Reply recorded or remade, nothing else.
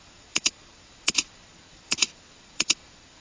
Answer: remade